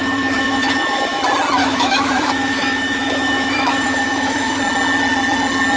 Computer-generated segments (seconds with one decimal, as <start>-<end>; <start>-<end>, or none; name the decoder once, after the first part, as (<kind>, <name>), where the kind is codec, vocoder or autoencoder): 0.0-1.2 (autoencoder, DAC-VAE); 1.6-4.6